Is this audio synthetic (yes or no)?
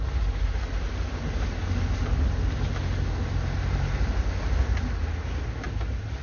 no